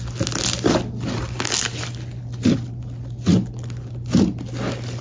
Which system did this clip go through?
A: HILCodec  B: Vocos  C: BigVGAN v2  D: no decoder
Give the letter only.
D